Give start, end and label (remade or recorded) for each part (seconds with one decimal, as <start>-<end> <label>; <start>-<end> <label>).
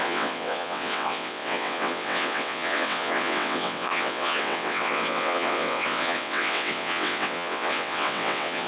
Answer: 0.0-8.7 remade